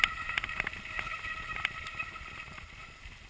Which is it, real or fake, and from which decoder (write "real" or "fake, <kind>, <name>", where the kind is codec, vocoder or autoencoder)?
real